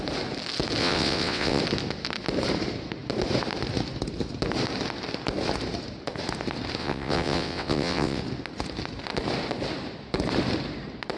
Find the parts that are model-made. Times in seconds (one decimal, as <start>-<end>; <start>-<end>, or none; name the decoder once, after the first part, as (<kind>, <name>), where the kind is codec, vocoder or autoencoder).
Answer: 0.8-1.6 (vocoder, WaveNeXt); 6.8-8.2